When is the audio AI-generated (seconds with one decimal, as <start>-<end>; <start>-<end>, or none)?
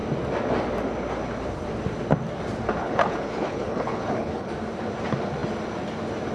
2.8-4.5